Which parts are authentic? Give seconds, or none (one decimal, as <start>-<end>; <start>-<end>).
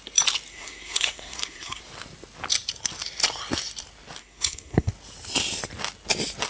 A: 0.0-0.5; 1.8-4.2; 4.9-6.5